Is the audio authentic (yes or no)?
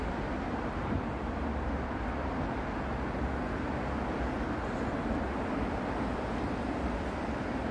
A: yes